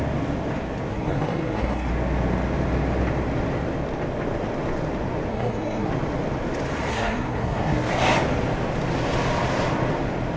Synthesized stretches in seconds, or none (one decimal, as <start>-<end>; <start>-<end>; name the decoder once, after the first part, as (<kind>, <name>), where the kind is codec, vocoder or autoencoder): 0.9-1.9 (codec, SNAC); 5.3-5.9; 6.9-7.9